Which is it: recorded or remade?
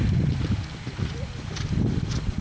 recorded